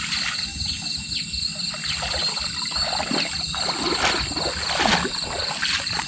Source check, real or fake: real